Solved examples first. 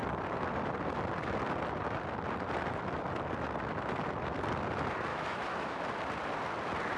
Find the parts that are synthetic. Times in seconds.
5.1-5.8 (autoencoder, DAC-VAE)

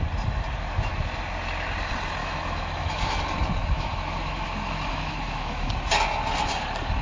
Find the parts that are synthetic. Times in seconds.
2.2-3.2 (autoencoder, DAC-VAE); 3.6-5.7